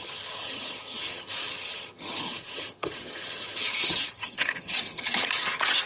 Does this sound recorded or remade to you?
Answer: remade